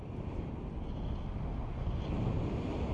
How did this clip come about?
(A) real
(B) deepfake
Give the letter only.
A